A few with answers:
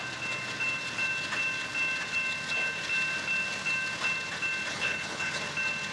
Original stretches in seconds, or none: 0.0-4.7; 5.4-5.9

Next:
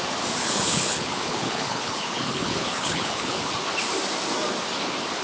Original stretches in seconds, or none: 0.0-0.4; 3.5-5.2

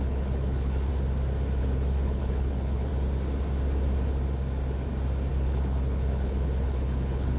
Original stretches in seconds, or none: 0.9-1.6; 2.9-5.3

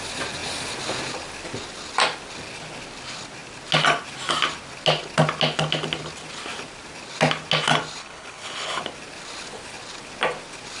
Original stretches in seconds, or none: 0.0-8.0; 8.8-10.8

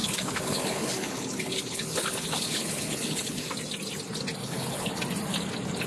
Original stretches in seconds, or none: 3.5-4.4; 5.0-5.9